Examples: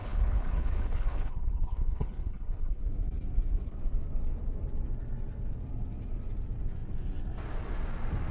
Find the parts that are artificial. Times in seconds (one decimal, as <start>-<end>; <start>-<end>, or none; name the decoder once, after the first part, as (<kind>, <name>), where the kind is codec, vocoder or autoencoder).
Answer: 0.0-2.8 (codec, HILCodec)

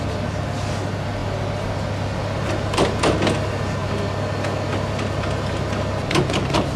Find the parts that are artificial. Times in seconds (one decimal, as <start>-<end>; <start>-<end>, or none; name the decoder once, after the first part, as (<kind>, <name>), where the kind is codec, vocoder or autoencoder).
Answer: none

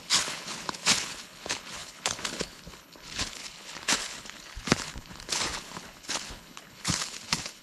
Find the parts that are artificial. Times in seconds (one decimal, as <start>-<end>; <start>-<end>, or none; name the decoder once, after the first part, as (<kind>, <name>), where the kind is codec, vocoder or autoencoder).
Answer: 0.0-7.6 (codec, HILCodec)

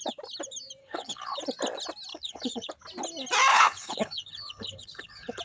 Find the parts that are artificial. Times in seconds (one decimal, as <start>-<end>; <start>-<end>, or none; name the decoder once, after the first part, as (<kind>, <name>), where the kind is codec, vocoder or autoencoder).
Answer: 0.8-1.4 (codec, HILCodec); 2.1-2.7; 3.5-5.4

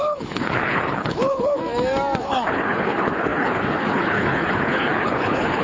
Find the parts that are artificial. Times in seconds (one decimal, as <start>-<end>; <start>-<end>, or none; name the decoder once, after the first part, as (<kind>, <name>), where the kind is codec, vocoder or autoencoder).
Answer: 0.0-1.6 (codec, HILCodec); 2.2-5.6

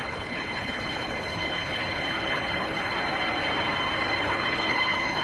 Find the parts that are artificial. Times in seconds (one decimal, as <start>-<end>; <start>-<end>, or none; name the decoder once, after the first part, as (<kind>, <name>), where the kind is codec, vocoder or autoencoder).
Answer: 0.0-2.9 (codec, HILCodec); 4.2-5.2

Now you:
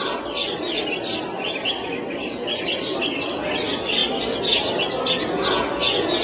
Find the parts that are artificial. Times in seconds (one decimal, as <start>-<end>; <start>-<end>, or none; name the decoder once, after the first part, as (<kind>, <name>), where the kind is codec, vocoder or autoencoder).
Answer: none

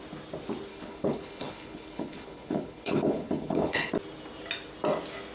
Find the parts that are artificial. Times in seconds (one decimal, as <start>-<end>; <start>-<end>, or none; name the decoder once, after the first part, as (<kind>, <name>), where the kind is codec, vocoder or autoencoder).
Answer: 0.7-3.9 (codec, HILCodec)